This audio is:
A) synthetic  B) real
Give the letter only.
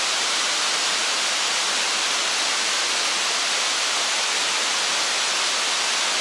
B